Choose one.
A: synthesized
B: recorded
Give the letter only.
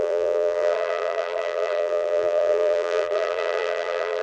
A